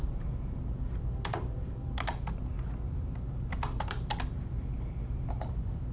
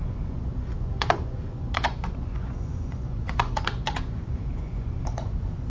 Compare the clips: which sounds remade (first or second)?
second